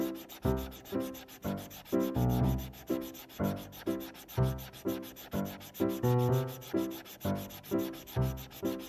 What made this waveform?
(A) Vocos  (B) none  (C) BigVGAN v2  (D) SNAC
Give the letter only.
B